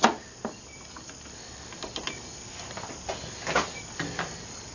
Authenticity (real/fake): real